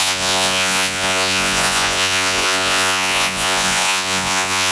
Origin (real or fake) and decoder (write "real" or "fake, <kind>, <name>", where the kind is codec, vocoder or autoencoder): fake, vocoder, Vocos